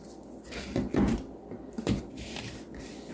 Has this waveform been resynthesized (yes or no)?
no